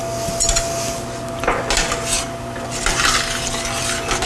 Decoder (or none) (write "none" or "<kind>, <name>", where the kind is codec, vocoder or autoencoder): none